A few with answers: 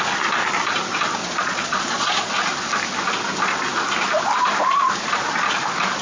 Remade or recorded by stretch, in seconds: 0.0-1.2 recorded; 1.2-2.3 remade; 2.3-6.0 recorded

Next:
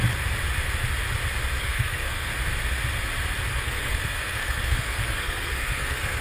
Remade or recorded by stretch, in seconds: 0.0-1.6 recorded; 1.6-2.3 remade; 2.3-3.5 recorded; 3.5-6.2 remade

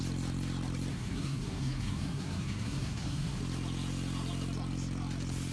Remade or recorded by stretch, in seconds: 0.0-0.9 recorded; 0.9-3.4 remade; 3.4-5.5 recorded

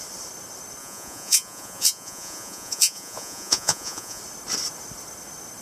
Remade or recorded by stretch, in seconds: 0.0-0.8 recorded; 0.8-4.2 remade; 4.2-5.6 recorded

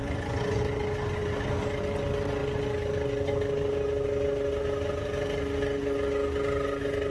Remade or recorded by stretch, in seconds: 0.0-0.6 remade; 0.6-7.1 recorded